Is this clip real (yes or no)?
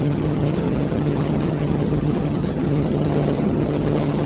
no